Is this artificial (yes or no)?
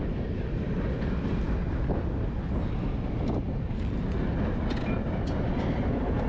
no